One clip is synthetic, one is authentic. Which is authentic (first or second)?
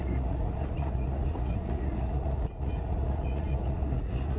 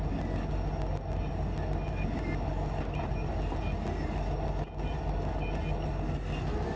second